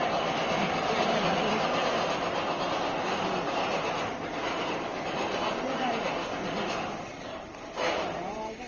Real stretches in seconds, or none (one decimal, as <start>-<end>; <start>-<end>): 0.0-8.7